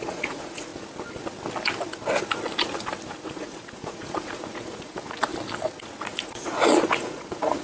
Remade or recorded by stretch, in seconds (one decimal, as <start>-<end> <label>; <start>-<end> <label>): 0.0-0.7 remade; 0.7-3.2 recorded; 3.2-5.3 remade; 5.3-6.0 recorded; 6.0-7.6 remade

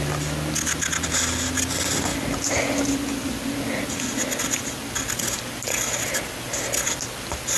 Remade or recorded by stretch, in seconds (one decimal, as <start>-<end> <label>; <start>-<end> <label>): 0.0-2.1 recorded; 2.1-6.6 remade; 6.6-7.6 recorded

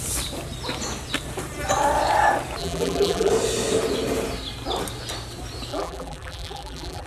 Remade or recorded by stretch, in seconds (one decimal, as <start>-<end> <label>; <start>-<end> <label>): 0.0-2.6 recorded; 2.6-3.3 remade; 3.3-5.7 recorded; 5.7-7.1 remade

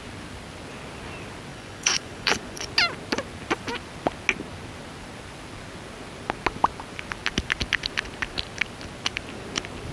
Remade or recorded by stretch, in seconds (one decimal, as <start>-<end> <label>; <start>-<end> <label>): 0.0-1.5 recorded; 1.5-2.7 remade; 2.7-9.9 recorded